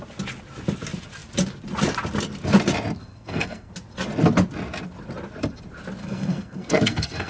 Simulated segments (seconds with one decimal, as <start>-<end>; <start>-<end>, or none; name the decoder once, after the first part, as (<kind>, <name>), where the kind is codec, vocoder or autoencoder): 3.1-3.7 (codec, SNAC); 6.0-7.3